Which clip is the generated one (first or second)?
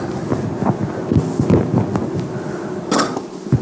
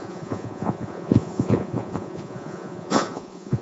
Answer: second